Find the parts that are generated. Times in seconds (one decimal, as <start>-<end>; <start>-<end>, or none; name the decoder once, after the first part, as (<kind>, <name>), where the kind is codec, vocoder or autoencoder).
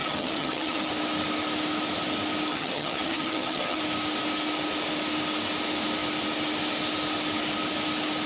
0.0-0.9 (vocoder, HiFi-GAN); 2.5-3.8